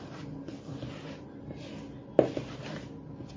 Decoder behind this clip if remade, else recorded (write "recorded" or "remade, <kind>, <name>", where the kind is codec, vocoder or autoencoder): recorded